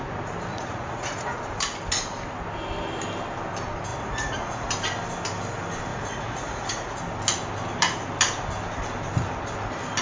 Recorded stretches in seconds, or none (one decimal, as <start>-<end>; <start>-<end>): 0.0-0.5; 1.4-3.9; 4.7-5.9; 7.0-10.0